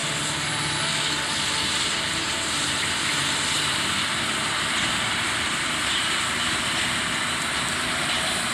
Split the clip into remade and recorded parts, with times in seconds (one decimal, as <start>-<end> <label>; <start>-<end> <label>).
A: 0.0-1.6 recorded; 1.6-8.5 remade